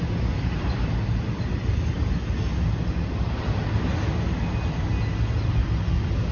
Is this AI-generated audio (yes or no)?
no